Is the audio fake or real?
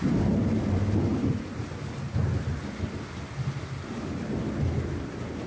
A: real